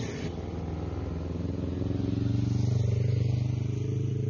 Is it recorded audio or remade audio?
recorded